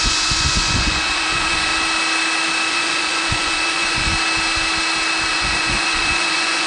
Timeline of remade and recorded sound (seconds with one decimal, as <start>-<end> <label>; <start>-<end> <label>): 0.0-1.7 remade; 1.7-2.7 recorded; 2.7-4.1 remade; 4.1-5.3 recorded; 5.3-6.7 remade